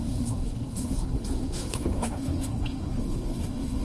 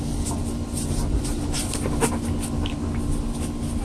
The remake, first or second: first